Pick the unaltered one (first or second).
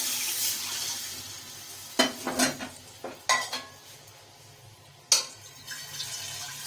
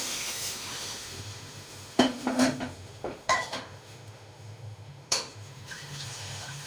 first